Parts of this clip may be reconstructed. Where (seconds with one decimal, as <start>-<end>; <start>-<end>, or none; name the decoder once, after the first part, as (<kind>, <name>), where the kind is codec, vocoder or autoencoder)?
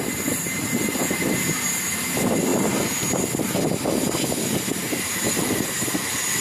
none